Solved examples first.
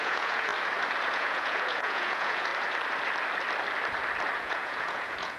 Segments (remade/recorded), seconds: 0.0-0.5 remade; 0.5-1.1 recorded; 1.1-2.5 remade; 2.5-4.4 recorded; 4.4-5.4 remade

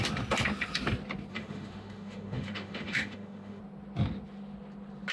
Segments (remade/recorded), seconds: 0.0-1.3 recorded; 1.3-3.6 remade; 3.6-5.1 recorded